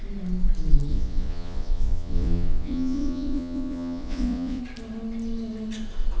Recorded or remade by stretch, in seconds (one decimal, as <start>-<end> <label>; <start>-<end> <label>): 0.0-0.9 recorded; 0.9-4.6 remade; 4.6-6.2 recorded